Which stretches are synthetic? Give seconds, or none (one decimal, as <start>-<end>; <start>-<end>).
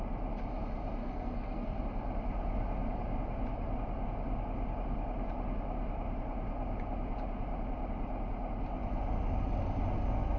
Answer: 1.0-1.8